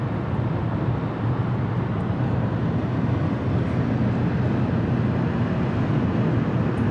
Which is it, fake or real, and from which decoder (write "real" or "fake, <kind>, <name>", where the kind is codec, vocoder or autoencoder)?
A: real